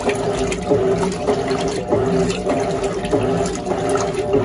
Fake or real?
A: real